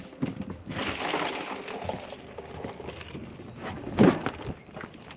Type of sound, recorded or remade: recorded